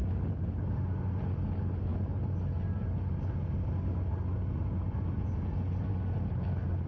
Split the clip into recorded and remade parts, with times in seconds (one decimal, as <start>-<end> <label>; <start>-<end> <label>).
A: 0.0-6.9 recorded